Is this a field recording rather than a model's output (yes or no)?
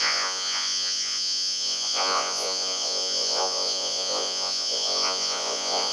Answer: no